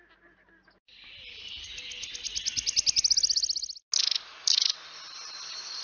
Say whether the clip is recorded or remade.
recorded